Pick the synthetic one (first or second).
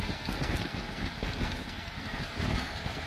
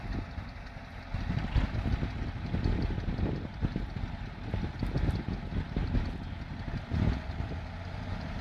first